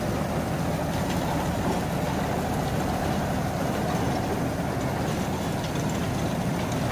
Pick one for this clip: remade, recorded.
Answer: recorded